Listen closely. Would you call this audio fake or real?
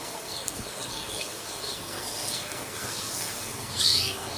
fake